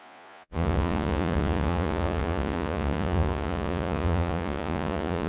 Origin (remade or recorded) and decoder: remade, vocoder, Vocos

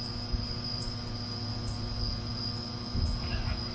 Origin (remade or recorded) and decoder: recorded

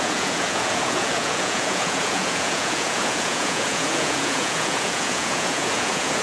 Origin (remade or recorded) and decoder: remade, vocoder, Vocos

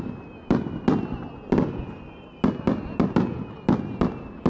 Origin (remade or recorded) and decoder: recorded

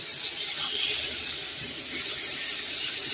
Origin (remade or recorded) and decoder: recorded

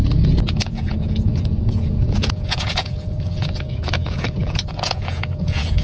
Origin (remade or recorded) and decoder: remade, vocoder, Vocos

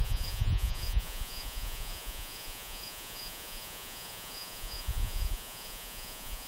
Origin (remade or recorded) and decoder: remade, vocoder, Vocos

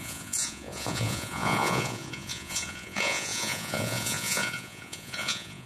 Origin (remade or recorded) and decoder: remade, vocoder, Vocos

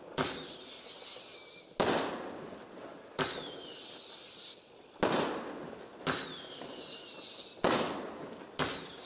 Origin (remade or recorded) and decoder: recorded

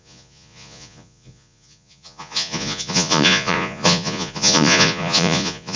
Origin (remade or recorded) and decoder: remade, vocoder, Vocos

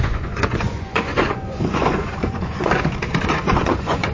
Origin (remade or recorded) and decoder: remade, vocoder, Vocos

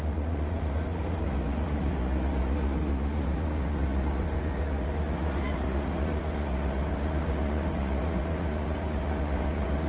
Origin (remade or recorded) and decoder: remade, vocoder, Vocos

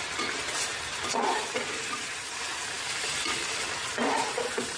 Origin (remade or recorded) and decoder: recorded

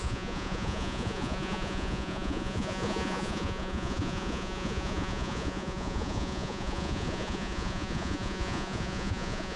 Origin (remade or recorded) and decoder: remade, vocoder, Vocos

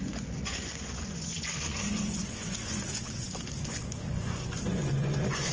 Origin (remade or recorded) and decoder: remade, vocoder, Vocos